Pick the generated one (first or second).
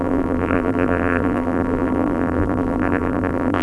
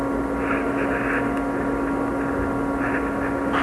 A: first